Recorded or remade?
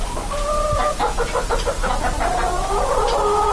recorded